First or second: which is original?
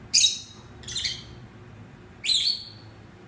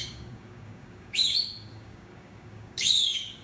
first